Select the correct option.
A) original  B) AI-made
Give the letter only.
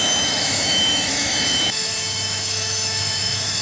B